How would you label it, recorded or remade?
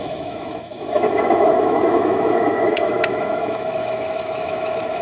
remade